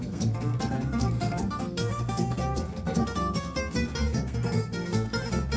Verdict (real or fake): fake